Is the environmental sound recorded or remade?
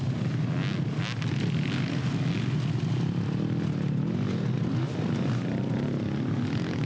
recorded